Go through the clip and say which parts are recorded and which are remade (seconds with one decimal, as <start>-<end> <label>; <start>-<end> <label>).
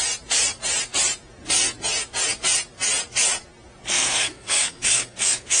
0.0-3.9 recorded; 3.9-5.6 remade